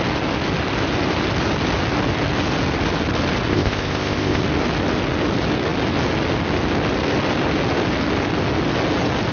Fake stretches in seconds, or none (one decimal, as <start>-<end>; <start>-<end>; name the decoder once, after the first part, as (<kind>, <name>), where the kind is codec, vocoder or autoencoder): 3.5-4.4 (codec, ZipCodec)